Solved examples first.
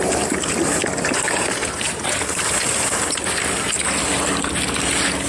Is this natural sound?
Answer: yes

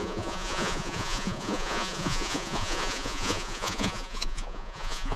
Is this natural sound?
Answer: no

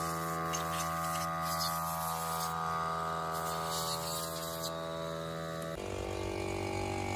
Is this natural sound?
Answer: yes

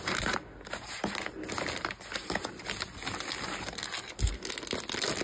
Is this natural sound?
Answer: yes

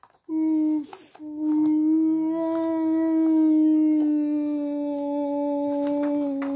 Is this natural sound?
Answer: yes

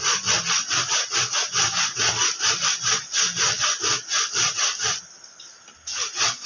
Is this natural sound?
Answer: yes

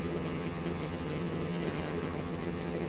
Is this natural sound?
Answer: no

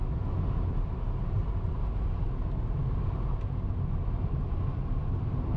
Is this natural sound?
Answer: yes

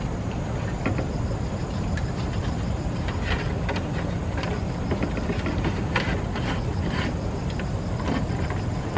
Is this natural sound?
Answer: yes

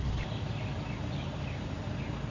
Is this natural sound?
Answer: yes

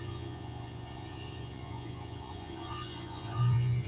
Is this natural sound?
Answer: no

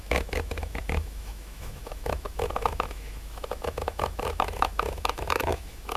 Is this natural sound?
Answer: no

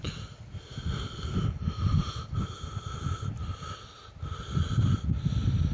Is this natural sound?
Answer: yes